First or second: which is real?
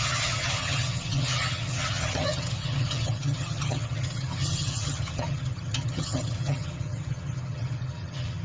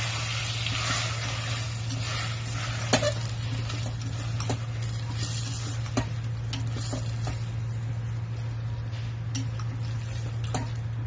second